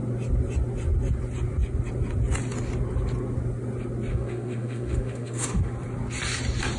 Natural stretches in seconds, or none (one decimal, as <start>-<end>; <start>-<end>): 0.0-4.1; 5.7-6.8